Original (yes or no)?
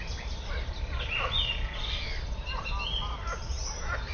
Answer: yes